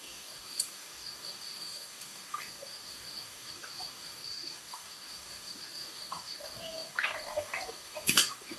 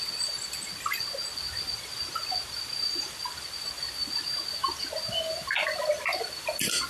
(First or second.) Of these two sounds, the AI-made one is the first